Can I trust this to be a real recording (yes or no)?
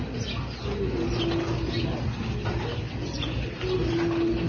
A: yes